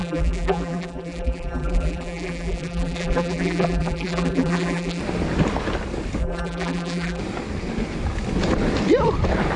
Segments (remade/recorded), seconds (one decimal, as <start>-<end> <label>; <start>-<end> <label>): 0.0-5.0 remade; 5.0-6.2 recorded; 6.2-7.2 remade; 7.2-9.6 recorded